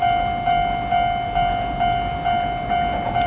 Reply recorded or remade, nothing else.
recorded